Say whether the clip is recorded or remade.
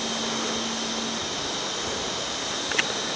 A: recorded